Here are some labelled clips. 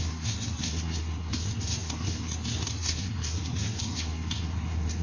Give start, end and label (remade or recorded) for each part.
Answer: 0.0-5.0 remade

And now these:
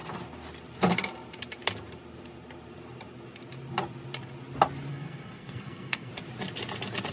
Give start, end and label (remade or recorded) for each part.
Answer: 0.0-4.9 recorded; 4.9-6.1 remade; 6.1-7.1 recorded

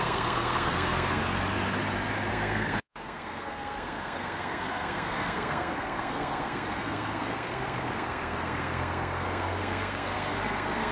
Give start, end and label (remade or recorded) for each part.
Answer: 0.0-1.2 remade; 1.2-2.3 recorded; 2.3-10.9 remade

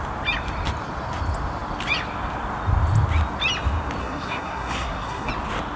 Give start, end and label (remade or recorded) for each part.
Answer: 0.0-4.0 recorded; 4.0-5.3 remade; 5.3-5.8 recorded

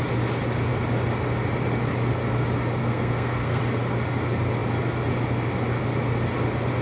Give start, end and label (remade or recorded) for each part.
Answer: 0.0-2.8 recorded; 2.8-3.6 remade; 3.6-6.8 recorded

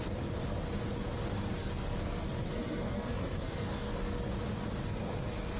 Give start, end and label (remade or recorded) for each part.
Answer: 0.0-1.6 recorded; 1.6-4.3 remade; 4.3-5.6 recorded